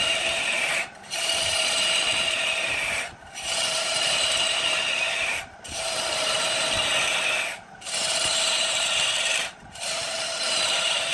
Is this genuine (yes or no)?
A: no